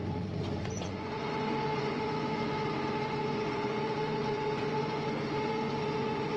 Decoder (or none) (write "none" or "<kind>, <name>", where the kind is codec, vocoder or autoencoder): vocoder, Vocos